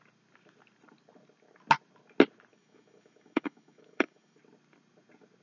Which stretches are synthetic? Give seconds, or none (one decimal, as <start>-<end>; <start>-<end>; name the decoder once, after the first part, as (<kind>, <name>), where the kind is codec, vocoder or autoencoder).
2.5-4.4 (autoencoder, DAC-VAE)